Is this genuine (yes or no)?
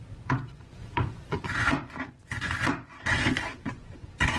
no